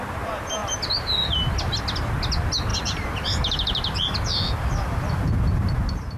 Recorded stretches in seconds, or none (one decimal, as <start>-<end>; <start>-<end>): 0.0-0.6; 1.8-2.7; 5.2-6.2